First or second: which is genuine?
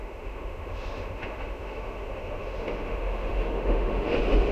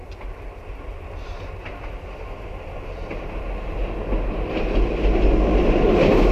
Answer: second